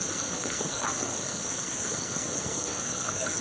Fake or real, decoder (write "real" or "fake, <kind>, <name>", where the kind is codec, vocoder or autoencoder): fake, codec, SNAC